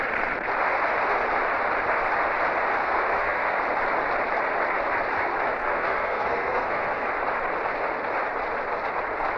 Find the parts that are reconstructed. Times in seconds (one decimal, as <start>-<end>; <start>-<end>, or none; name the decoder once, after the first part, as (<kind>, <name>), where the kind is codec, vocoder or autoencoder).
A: 2.8-3.6 (codec, SNAC); 5.6-7.1